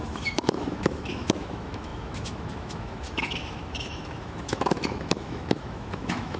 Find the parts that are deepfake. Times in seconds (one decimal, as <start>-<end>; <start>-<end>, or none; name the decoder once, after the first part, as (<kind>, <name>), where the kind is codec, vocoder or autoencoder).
0.0-6.4 (autoencoder, DAC-VAE)